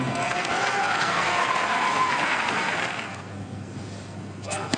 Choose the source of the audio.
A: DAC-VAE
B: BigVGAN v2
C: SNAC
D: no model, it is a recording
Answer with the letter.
C